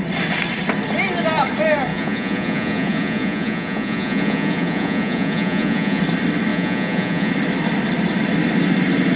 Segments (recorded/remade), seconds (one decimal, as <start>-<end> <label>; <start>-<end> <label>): 0.0-1.9 recorded; 1.9-6.0 remade; 6.0-6.5 recorded; 6.5-7.3 remade; 7.3-9.2 recorded